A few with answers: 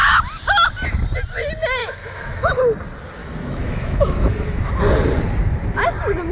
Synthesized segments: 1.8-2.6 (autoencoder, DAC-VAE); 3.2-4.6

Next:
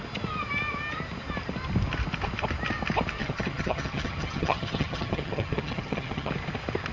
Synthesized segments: 3.2-6.3 (vocoder, HiFi-GAN)

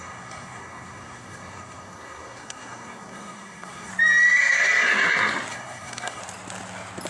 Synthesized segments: 0.0-3.9 (codec, SNAC); 5.5-6.2